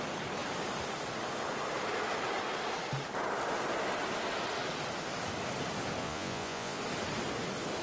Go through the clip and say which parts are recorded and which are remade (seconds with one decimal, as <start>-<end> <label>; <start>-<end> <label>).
0.0-6.0 recorded; 6.0-6.8 remade; 6.8-7.8 recorded